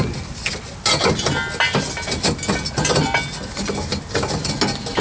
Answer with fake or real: real